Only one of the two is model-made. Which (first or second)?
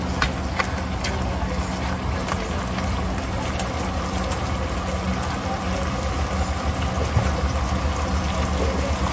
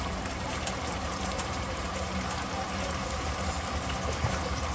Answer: second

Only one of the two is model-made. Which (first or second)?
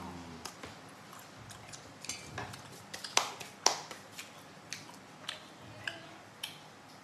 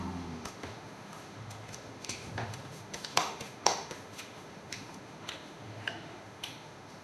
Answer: second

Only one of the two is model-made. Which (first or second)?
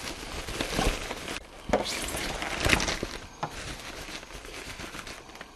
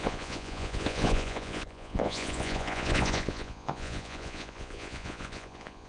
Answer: second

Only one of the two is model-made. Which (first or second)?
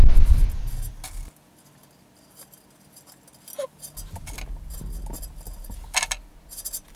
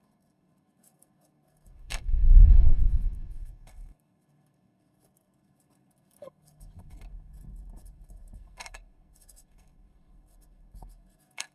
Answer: second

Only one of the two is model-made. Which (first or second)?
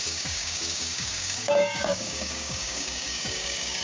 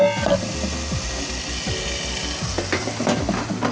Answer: first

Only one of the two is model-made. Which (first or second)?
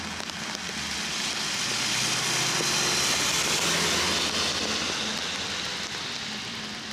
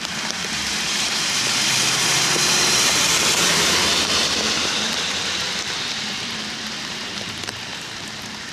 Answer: second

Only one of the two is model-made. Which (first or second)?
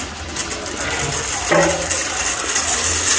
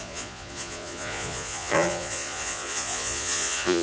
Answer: second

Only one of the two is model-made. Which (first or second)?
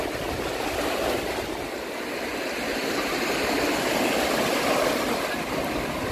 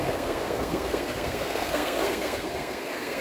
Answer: second